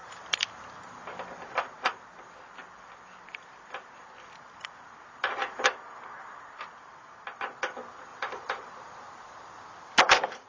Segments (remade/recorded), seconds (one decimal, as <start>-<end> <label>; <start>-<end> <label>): 0.0-0.5 remade; 0.5-8.1 recorded; 8.1-10.5 remade

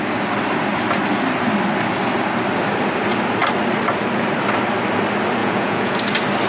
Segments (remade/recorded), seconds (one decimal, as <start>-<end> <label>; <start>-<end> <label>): 0.0-5.4 recorded; 5.4-6.0 remade; 6.0-6.5 recorded